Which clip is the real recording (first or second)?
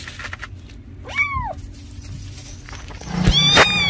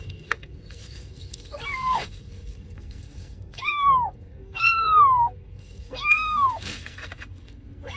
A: first